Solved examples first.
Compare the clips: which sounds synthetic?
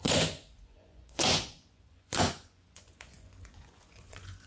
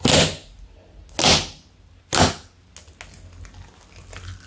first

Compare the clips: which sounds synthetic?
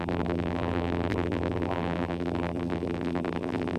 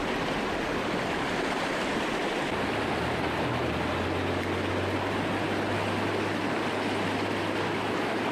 first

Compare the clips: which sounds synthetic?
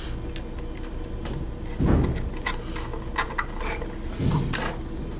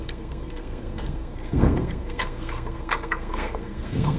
second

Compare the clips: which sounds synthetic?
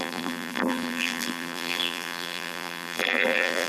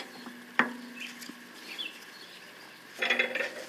first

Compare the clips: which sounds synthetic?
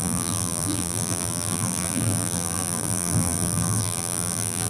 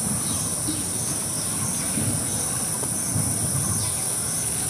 first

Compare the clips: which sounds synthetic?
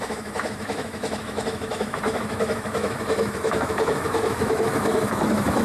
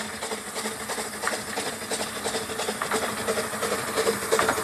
first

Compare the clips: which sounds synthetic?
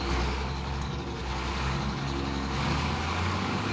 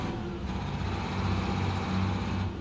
first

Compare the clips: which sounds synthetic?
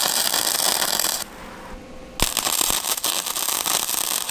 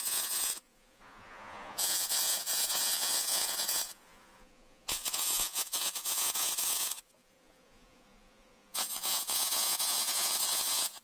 second